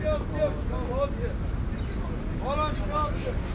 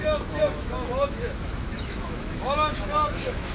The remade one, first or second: second